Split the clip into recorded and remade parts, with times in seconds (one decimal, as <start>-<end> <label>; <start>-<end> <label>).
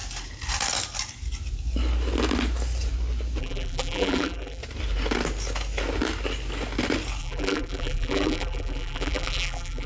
0.0-3.4 recorded; 3.4-4.6 remade; 4.6-7.2 recorded; 7.2-9.9 remade